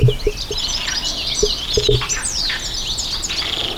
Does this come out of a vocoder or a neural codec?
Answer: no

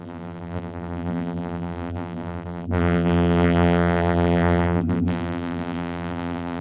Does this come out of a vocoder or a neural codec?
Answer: yes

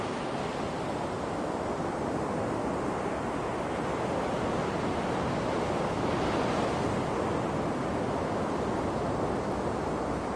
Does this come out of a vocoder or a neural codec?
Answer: no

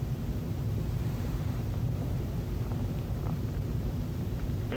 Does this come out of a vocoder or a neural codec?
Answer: yes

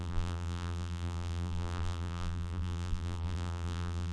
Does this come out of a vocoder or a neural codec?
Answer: yes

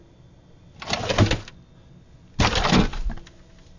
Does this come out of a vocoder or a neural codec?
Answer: no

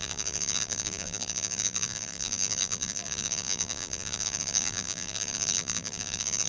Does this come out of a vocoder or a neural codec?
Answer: yes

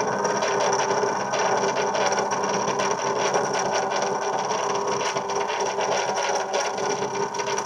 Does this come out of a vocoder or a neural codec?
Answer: no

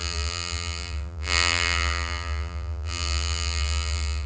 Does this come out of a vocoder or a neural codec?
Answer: yes